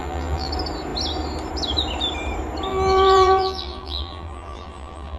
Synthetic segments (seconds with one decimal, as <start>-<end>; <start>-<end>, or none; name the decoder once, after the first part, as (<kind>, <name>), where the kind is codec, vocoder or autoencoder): 0.0-0.5 (vocoder, BigVGAN v2); 2.7-5.2